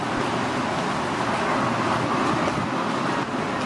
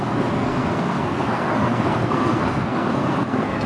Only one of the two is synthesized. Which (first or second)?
second